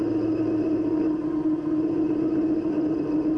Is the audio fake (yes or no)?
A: no